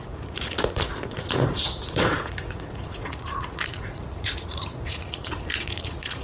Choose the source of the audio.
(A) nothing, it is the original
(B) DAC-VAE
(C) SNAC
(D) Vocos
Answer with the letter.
D